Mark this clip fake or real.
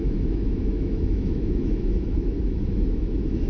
fake